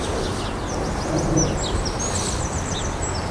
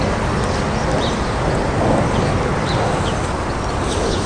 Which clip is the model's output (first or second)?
first